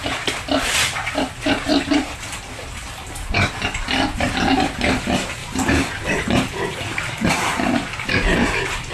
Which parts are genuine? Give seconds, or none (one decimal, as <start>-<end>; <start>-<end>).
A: 0.0-5.4; 7.7-8.9